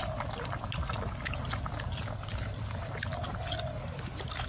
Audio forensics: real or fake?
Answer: real